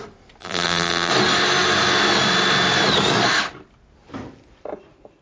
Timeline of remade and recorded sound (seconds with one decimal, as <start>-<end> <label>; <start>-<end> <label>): 0.0-0.4 recorded; 0.4-1.1 remade; 1.1-5.2 recorded

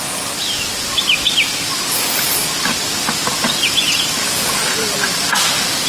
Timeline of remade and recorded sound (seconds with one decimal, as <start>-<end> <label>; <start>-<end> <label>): 0.0-5.9 recorded